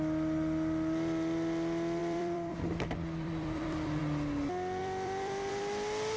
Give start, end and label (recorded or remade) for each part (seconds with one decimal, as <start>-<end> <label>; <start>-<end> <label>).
0.0-2.0 recorded; 2.0-4.0 remade; 4.0-4.8 recorded; 4.8-5.6 remade; 5.6-6.2 recorded